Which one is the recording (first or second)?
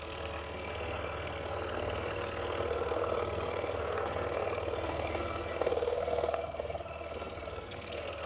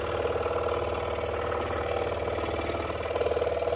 second